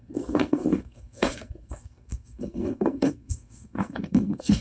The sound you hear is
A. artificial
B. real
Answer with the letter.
A